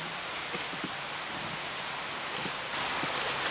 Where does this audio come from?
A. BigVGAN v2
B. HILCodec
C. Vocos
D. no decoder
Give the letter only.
D